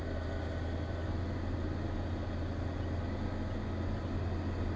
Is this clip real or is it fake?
real